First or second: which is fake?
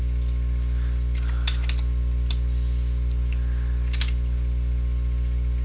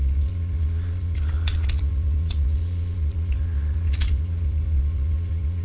second